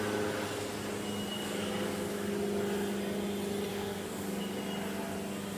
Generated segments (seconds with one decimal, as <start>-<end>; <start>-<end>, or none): 1.3-2.3; 3.7-4.6